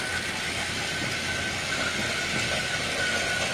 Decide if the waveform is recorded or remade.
recorded